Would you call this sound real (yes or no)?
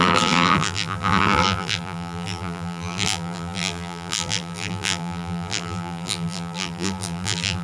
no